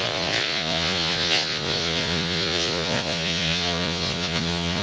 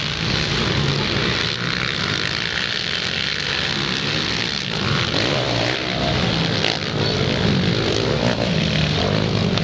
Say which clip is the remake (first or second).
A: first